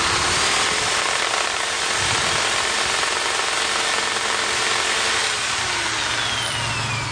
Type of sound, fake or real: real